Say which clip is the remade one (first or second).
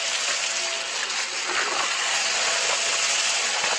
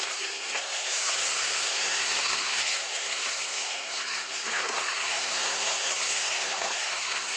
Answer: second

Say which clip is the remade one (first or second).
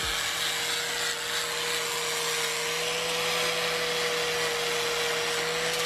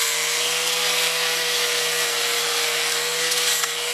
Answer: second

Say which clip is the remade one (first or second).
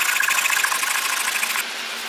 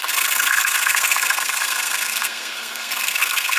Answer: second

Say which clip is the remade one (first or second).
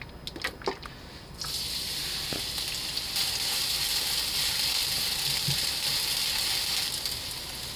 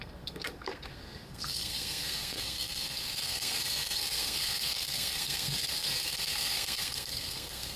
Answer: second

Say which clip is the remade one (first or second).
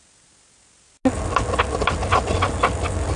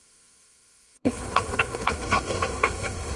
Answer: second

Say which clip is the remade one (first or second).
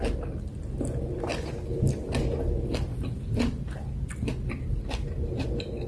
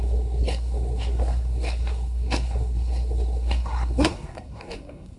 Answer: second